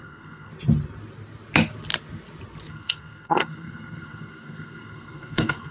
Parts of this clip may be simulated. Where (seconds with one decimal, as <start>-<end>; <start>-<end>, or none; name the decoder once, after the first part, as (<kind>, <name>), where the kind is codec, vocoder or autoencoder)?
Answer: 0.0-0.5 (codec, SNAC); 2.7-5.7